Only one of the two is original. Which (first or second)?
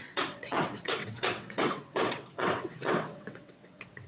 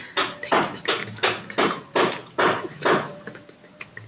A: second